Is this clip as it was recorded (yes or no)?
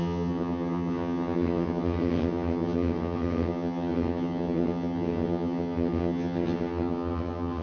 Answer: no